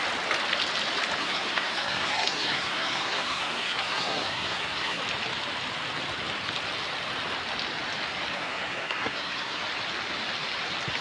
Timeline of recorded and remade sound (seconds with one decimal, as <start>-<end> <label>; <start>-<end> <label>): 0.0-1.2 recorded; 1.2-5.0 remade; 5.0-8.3 recorded; 8.3-9.6 remade; 9.6-11.0 recorded